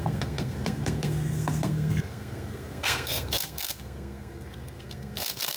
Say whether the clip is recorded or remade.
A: remade